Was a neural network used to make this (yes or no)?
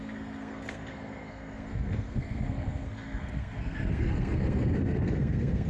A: yes